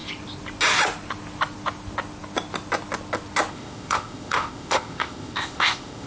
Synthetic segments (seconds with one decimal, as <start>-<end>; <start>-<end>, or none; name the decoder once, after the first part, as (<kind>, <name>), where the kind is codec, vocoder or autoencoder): 3.5-6.1 (codec, ZipCodec)